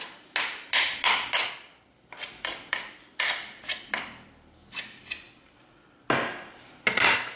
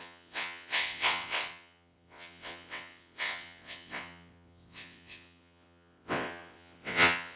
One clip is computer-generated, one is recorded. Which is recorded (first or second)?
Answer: first